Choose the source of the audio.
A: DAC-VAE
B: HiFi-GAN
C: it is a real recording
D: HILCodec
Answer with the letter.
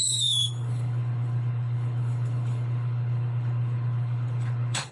D